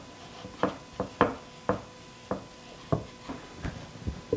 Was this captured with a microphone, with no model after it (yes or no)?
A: yes